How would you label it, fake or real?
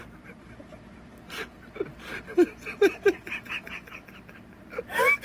real